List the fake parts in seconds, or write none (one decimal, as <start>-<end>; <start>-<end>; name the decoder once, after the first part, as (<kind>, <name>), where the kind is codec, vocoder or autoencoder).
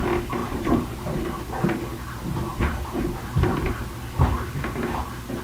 0.4-1.4 (vocoder, BigVGAN v2)